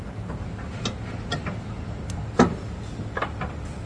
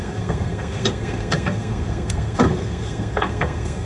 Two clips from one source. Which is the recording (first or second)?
first